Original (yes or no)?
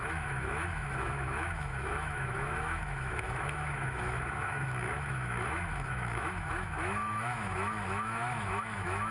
no